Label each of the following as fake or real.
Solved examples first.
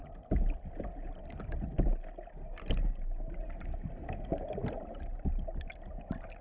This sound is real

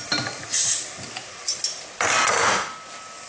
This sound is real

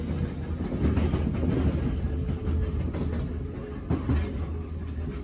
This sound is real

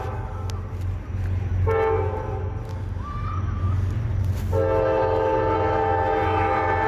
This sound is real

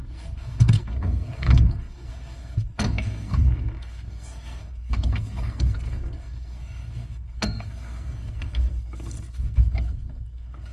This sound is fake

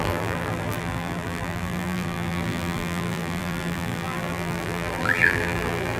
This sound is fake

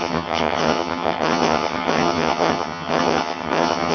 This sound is fake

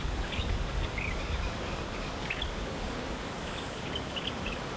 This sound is fake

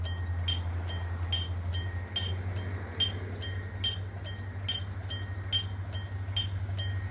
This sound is real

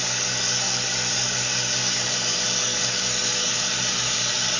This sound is fake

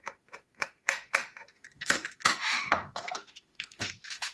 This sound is fake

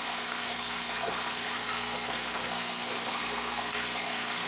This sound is fake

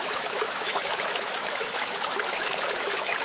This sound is fake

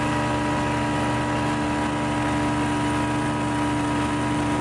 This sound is real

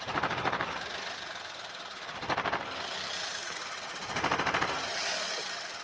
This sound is real